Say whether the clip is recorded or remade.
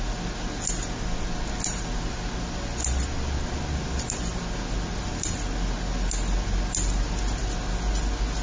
recorded